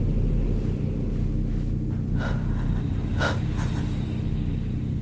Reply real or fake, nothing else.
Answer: real